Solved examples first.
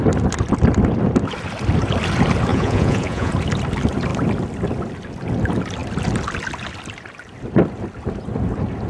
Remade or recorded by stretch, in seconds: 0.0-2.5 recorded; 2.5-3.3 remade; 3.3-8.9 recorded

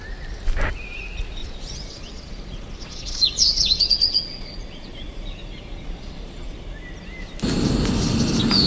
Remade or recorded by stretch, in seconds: 0.0-1.4 recorded; 1.4-6.6 remade; 6.6-8.7 recorded

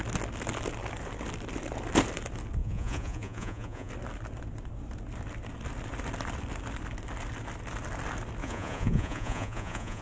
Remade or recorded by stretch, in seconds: 0.0-2.6 recorded; 2.6-3.9 remade; 3.9-8.4 recorded; 8.4-10.0 remade

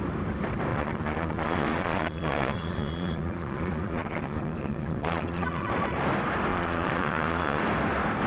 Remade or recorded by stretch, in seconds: 0.0-0.7 recorded; 0.7-5.7 remade; 5.7-6.5 recorded; 6.5-7.6 remade; 7.6-8.3 recorded

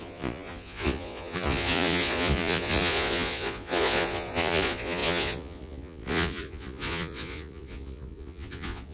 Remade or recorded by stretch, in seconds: 0.0-8.9 remade

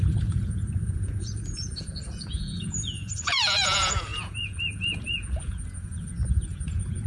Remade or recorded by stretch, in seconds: 0.0-7.1 remade

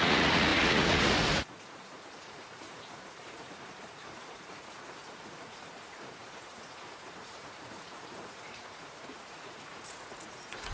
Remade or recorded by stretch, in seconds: 0.0-10.7 remade